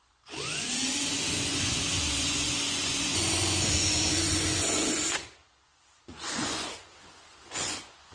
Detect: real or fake fake